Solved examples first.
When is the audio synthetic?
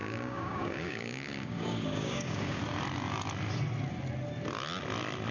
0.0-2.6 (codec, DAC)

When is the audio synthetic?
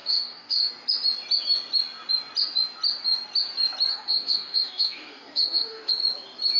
0.0-0.7 (codec, DAC); 3.9-5.9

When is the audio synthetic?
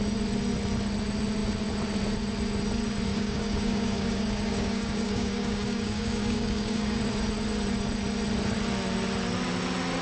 3.1-7.0 (codec, DAC)